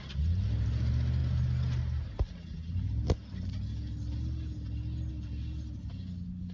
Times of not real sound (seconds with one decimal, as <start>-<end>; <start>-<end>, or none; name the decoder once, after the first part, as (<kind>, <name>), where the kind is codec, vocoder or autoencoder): none